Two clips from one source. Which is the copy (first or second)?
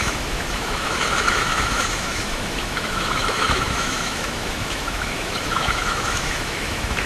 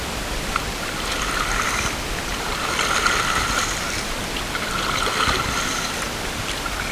first